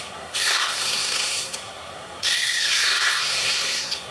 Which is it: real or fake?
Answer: fake